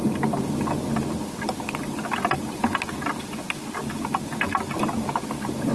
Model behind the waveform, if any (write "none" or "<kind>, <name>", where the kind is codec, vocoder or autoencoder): none